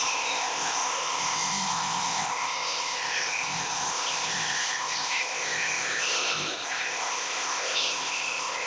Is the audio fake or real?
fake